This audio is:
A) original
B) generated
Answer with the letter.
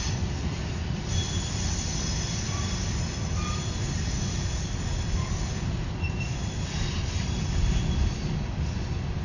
A